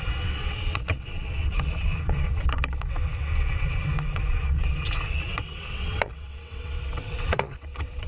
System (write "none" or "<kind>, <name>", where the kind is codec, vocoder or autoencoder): vocoder, WaveNeXt